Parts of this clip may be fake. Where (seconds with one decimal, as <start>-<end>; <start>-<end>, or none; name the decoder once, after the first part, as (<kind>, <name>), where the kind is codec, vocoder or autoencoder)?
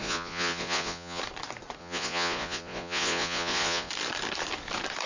0.0-1.2 (vocoder, Vocos); 1.8-3.9